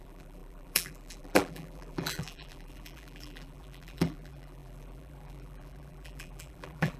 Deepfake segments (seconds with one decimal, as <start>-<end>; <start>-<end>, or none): 0.0-7.0